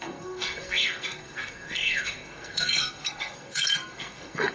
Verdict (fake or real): fake